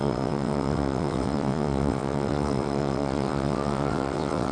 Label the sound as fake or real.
fake